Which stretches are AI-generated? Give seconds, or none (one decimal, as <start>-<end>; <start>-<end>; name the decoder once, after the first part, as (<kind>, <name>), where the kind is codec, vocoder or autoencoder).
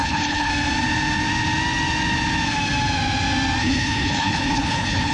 0.0-0.5 (codec, HILCodec); 3.6-5.1